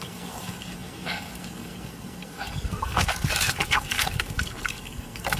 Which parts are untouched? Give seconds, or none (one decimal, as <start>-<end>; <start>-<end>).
none